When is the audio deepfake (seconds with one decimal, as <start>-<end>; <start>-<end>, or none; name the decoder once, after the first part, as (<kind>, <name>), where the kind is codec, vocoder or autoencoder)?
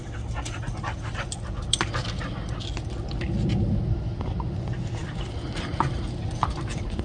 none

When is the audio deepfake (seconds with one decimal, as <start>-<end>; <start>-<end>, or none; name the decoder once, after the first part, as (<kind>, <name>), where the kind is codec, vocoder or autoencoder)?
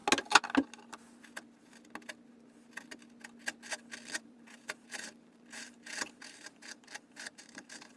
4.2-8.0 (vocoder, BigVGAN v2)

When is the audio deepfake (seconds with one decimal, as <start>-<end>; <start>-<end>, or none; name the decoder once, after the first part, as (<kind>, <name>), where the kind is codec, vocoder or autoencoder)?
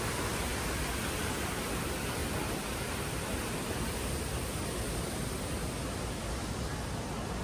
0.5-1.3 (vocoder, BigVGAN v2); 2.2-5.8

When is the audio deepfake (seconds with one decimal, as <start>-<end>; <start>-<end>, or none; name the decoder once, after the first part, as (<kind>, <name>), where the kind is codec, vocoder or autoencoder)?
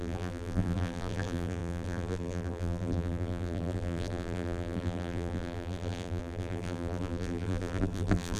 0.0-8.4 (vocoder, BigVGAN v2)